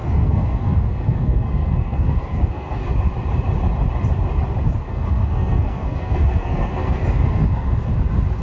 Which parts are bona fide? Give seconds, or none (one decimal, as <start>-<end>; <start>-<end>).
2.9-4.9; 7.9-8.4

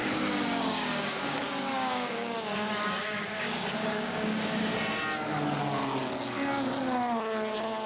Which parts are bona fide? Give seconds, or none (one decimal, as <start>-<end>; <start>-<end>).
4.7-7.9

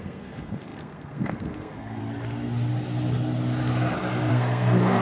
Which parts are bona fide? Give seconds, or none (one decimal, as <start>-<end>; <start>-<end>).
2.0-4.3